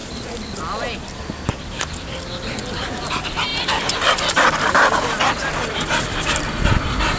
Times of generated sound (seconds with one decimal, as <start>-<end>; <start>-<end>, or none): 2.7-7.2